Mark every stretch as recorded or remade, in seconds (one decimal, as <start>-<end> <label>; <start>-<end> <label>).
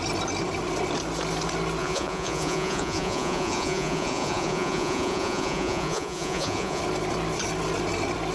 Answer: 0.0-1.8 recorded; 1.8-6.8 remade; 6.8-8.3 recorded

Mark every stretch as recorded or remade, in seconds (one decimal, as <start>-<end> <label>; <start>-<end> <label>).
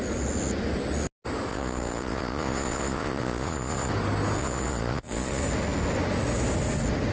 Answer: 0.0-1.5 recorded; 1.5-3.9 remade; 3.9-4.4 recorded; 4.4-5.4 remade; 5.4-7.1 recorded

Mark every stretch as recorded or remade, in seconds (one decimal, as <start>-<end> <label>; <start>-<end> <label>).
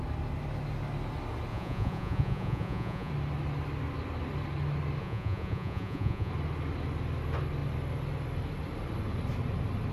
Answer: 0.0-1.5 recorded; 1.5-3.1 remade; 3.1-5.0 recorded; 5.0-6.3 remade; 6.3-9.9 recorded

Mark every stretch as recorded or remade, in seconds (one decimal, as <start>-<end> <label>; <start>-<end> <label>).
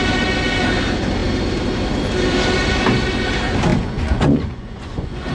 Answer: 0.0-3.7 recorded; 3.7-5.3 remade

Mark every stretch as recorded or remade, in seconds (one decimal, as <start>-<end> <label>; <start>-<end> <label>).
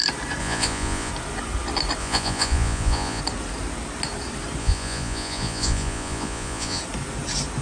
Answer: 0.0-0.4 recorded; 0.4-1.1 remade; 1.1-2.0 recorded; 2.0-3.2 remade; 3.2-4.6 recorded; 4.6-6.8 remade; 6.8-7.6 recorded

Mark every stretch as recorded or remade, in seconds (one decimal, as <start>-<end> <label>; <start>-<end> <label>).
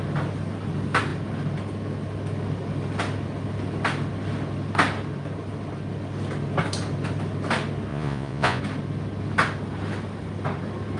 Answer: 0.0-7.9 recorded; 7.9-8.6 remade; 8.6-11.0 recorded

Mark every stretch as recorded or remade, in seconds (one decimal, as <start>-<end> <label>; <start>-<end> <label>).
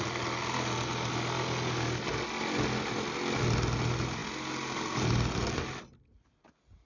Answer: 0.0-6.9 recorded